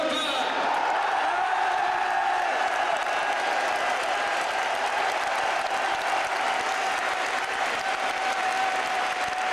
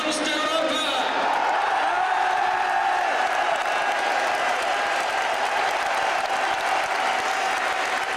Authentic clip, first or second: second